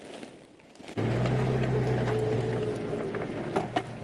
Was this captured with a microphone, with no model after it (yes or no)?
yes